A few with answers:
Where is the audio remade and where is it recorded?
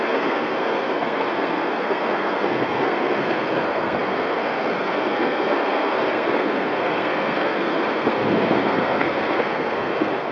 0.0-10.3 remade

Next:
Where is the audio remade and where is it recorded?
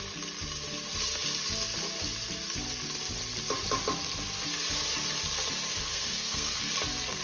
0.0-5.9 recorded; 5.9-6.7 remade; 6.7-7.2 recorded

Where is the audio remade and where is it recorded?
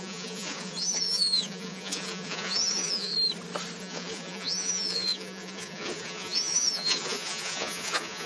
0.0-3.1 remade; 3.1-3.8 recorded; 3.8-8.3 remade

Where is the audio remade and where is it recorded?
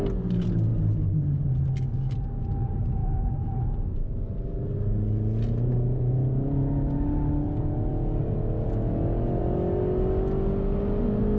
0.0-0.7 recorded; 0.7-1.6 remade; 1.6-3.0 recorded; 3.0-3.6 remade; 3.6-11.4 recorded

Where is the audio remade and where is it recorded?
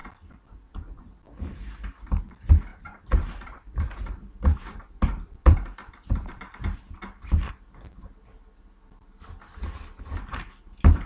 0.0-1.0 remade; 1.0-2.7 recorded; 2.7-7.5 remade; 7.5-11.1 recorded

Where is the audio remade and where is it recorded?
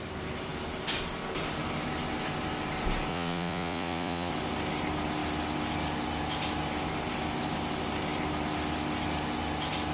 0.0-3.1 recorded; 3.1-4.3 remade; 4.3-9.9 recorded